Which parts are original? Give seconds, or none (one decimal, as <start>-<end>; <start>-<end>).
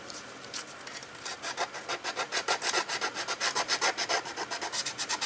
0.0-5.3